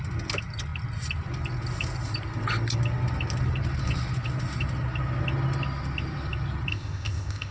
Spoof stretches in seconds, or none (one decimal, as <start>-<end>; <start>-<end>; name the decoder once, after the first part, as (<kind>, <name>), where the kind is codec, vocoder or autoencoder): 6.7-7.5 (codec, ZipCodec)